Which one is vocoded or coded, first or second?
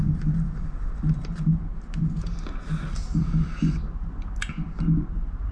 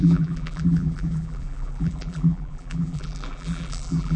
second